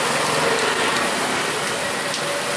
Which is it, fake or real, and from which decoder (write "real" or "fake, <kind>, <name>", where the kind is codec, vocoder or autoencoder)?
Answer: real